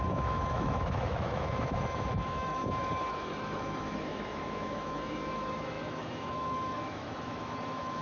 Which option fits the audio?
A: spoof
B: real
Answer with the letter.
A